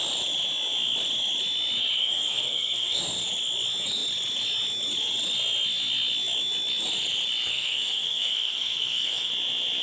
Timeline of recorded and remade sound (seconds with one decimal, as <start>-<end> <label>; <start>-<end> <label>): 0.0-2.0 recorded; 2.0-3.0 remade; 3.0-7.5 recorded; 7.5-9.3 remade; 9.3-9.8 recorded